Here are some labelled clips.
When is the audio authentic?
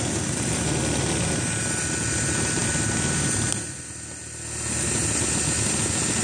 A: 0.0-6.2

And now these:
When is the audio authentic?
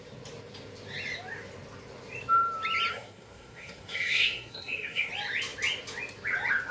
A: 0.0-2.9; 5.1-6.7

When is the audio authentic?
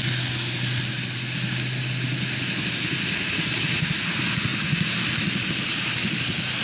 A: 0.0-6.6